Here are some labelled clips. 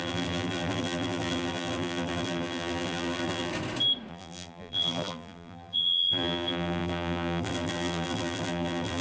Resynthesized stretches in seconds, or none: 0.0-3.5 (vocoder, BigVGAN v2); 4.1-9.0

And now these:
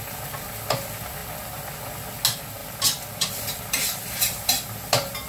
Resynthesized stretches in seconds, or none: 2.6-5.3 (vocoder, BigVGAN v2)

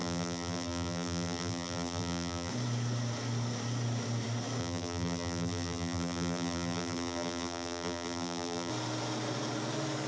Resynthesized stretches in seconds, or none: 0.0-2.5 (vocoder, BigVGAN v2); 4.6-8.7

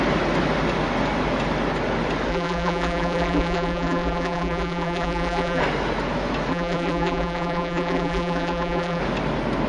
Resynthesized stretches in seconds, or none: 2.3-5.6 (vocoder, BigVGAN v2); 6.5-9.0

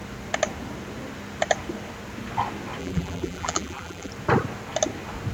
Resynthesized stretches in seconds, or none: 2.8-4.1 (vocoder, BigVGAN v2)

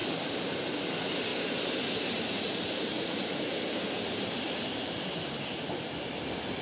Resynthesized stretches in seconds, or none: 0.0-0.7 (vocoder, BigVGAN v2); 1.3-5.3